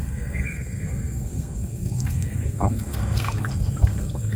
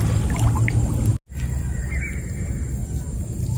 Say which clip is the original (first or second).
second